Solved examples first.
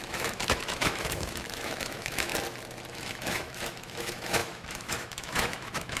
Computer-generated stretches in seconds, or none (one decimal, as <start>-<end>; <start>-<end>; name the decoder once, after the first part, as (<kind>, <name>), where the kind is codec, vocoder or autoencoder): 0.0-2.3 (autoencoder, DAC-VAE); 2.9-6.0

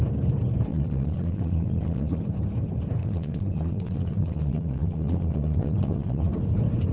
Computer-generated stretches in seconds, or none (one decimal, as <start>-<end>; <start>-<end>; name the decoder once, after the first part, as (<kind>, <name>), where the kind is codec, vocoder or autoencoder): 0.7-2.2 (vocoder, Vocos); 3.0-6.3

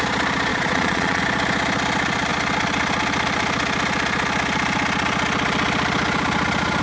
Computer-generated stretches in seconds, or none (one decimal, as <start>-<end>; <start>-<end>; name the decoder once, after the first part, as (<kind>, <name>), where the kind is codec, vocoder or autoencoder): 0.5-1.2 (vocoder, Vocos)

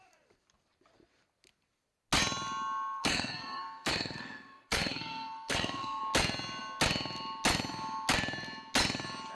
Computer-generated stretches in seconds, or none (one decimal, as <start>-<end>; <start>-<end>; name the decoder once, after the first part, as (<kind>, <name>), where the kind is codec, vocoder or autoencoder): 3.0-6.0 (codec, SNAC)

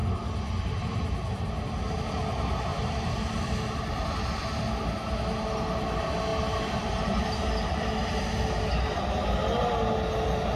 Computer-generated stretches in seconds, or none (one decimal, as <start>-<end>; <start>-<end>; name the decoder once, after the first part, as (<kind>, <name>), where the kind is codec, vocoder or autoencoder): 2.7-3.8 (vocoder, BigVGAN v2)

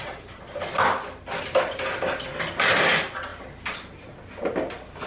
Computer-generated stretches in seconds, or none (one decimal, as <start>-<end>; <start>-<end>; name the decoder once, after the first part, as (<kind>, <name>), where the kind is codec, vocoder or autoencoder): none

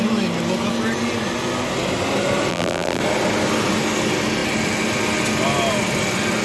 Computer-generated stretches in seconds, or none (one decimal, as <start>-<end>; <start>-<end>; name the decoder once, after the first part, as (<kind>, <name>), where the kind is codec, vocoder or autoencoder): 2.5-3.0 (vocoder, BigVGAN v2)